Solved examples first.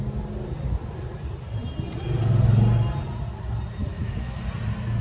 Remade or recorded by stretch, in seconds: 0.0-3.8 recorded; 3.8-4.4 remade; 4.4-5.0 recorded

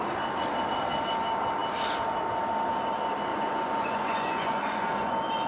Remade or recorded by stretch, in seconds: 0.0-3.3 recorded; 3.3-5.1 remade; 5.1-5.5 recorded